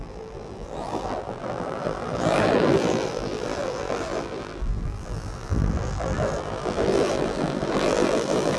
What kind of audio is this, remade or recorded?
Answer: remade